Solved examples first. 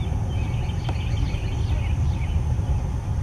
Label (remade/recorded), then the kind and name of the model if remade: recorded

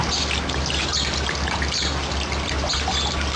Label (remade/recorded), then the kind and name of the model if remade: recorded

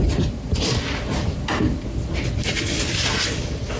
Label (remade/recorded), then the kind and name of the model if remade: recorded